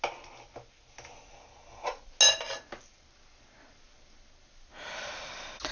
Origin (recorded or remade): recorded